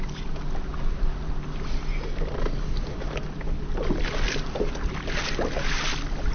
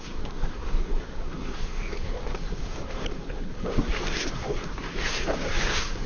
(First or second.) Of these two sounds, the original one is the first